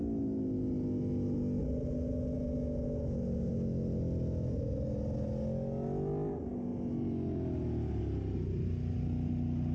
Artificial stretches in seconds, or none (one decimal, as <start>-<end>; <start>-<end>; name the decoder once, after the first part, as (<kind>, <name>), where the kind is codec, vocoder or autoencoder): none